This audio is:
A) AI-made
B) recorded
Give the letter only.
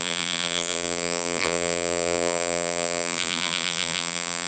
A